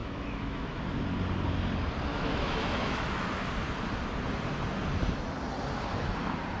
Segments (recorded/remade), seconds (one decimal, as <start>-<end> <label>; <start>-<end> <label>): 0.0-0.8 remade; 0.8-2.1 recorded; 2.1-3.3 remade; 3.3-6.6 recorded